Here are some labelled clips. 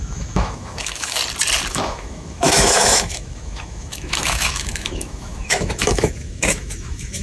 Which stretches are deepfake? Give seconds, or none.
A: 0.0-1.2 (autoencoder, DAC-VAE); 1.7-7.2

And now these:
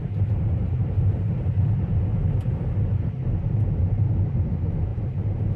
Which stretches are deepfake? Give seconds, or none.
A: 0.0-2.1 (vocoder, BigVGAN v2); 3.6-5.6

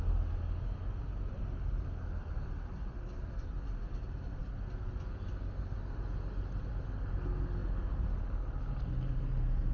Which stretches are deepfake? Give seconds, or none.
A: none

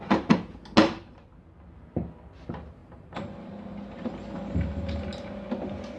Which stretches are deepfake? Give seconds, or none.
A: 0.8-1.3 (vocoder, BigVGAN v2); 2.8-3.5

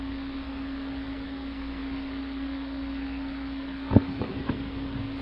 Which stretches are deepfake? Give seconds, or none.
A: 0.0-5.2 (codec, SNAC)

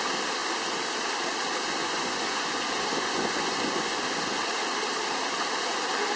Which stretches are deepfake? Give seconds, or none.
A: 1.8-4.0 (vocoder, Vocos)

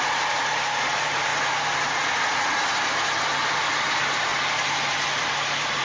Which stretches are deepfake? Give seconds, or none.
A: 0.0-1.3 (vocoder, BigVGAN v2); 3.8-4.3; 4.9-5.8